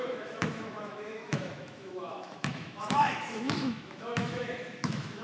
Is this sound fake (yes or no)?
yes